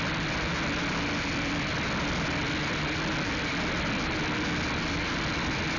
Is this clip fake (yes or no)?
no